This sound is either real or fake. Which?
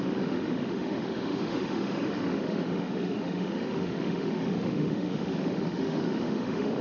fake